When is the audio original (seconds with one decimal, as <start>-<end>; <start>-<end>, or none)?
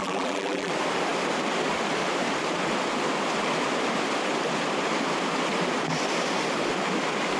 0.7-7.4